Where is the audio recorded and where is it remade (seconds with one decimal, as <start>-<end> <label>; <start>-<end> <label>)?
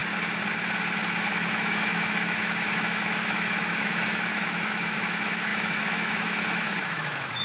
0.0-1.3 recorded; 1.3-7.4 remade